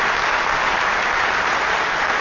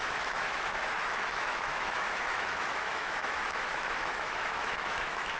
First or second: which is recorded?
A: first